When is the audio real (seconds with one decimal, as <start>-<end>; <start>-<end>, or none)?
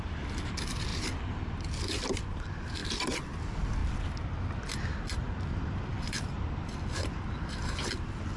0.9-1.5; 2.8-3.4; 3.8-5.8